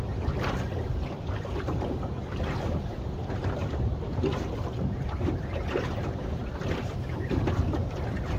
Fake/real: fake